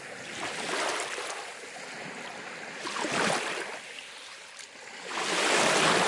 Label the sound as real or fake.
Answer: real